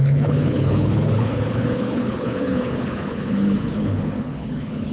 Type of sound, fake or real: fake